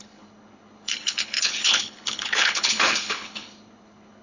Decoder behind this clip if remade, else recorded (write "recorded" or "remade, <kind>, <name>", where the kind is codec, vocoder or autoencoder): remade, codec, HILCodec